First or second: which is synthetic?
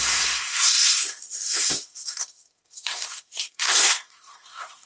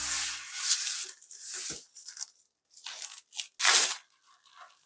first